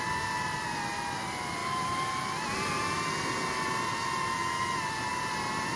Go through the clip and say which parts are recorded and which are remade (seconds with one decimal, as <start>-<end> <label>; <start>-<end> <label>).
0.0-5.8 recorded